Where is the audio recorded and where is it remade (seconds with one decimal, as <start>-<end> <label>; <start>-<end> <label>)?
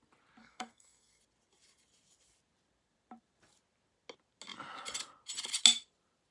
0.0-0.4 recorded; 0.4-1.2 remade; 1.2-6.3 recorded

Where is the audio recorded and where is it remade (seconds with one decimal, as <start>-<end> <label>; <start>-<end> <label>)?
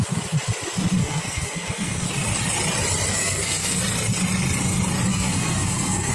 0.0-1.0 recorded; 1.0-2.1 remade; 2.1-3.1 recorded; 3.1-3.8 remade; 3.8-5.1 recorded; 5.1-6.1 remade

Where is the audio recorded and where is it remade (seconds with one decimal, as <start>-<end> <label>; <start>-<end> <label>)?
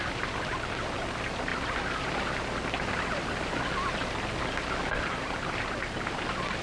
0.0-6.6 recorded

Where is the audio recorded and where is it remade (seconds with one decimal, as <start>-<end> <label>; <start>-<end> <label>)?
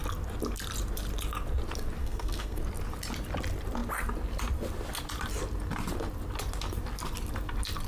0.0-2.0 recorded; 2.0-2.6 remade; 2.6-7.9 recorded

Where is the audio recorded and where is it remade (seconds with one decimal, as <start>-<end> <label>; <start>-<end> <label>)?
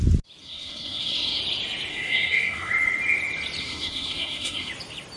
0.0-0.4 recorded; 0.4-1.4 remade; 1.4-1.9 recorded; 1.9-2.7 remade; 2.7-3.6 recorded; 3.6-4.7 remade; 4.7-5.2 recorded